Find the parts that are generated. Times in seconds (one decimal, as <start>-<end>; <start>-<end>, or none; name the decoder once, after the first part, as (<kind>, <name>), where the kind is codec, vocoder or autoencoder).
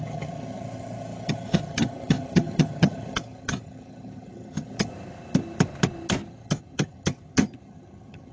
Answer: 0.0-4.9 (vocoder, HiFi-GAN); 6.3-8.3